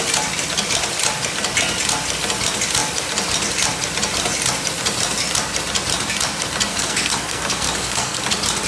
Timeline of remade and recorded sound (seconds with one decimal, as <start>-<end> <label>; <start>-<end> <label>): 0.0-6.7 recorded; 6.7-8.2 remade; 8.2-8.7 recorded